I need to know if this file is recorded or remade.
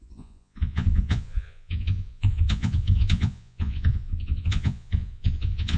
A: remade